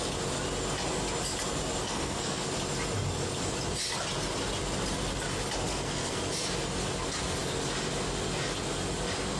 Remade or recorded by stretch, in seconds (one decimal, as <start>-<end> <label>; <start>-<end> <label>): 0.0-1.8 recorded; 1.8-2.4 remade; 2.4-5.7 recorded; 5.7-6.2 remade; 6.2-9.4 recorded